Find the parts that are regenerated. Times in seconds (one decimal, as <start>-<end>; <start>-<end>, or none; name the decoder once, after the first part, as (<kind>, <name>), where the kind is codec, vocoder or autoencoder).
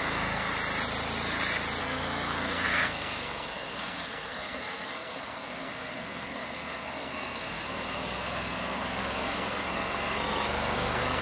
0.0-0.5 (codec, SNAC); 1.8-11.2